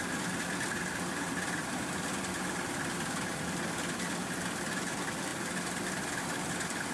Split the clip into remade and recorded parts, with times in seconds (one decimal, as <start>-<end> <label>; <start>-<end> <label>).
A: 0.0-6.9 recorded